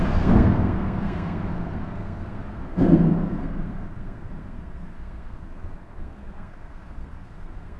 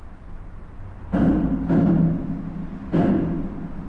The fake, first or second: first